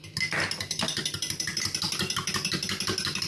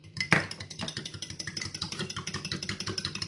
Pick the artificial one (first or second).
second